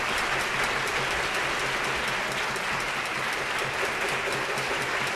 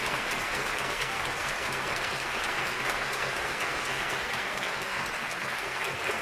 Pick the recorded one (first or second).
first